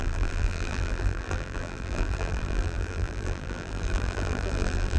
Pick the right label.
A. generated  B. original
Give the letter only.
A